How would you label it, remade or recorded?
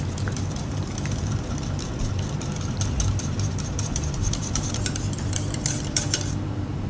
remade